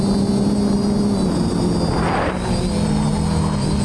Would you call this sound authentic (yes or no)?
yes